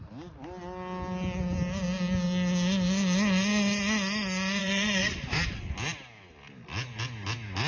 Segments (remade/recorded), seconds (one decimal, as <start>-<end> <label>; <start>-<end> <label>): 0.0-4.6 recorded; 4.6-5.7 remade; 5.7-7.7 recorded